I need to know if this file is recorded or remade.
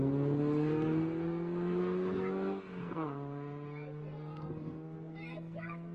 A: remade